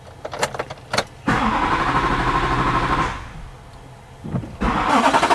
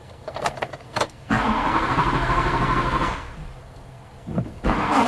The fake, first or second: second